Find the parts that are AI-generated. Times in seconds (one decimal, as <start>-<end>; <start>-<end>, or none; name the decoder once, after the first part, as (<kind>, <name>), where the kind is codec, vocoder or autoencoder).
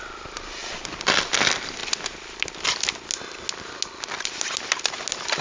none